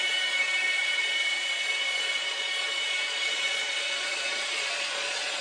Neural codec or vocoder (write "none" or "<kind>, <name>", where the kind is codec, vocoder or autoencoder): vocoder, Vocos